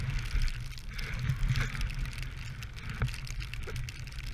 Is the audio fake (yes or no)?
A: no